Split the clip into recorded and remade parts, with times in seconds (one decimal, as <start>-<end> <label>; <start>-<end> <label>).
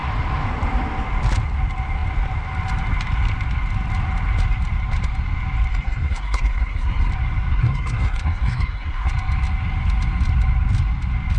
0.0-5.7 recorded; 5.7-7.1 remade; 7.1-7.5 recorded; 7.5-9.1 remade; 9.1-11.4 recorded